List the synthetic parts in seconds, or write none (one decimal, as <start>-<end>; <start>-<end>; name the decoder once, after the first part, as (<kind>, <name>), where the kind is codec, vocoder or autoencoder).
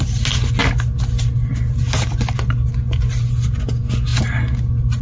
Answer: none